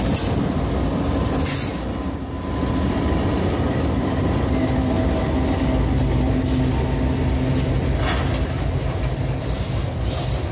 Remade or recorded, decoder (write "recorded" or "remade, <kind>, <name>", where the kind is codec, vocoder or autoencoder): recorded